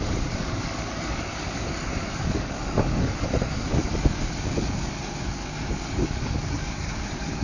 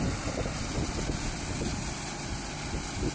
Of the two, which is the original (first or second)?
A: second